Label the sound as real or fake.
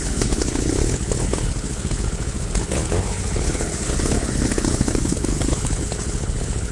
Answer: fake